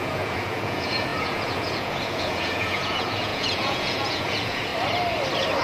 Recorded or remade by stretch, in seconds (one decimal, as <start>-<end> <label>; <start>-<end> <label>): 0.0-4.7 remade; 4.7-5.6 recorded